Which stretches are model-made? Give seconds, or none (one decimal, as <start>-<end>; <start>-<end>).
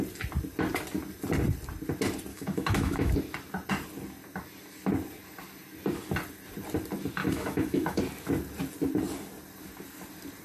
2.3-3.1; 7.2-8.0